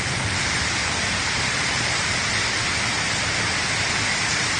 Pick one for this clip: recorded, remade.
remade